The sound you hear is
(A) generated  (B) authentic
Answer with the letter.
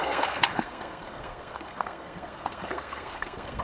A